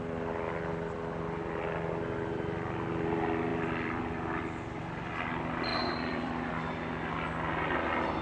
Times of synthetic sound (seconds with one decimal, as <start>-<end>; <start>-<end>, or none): 3.5-4.4; 5.7-6.5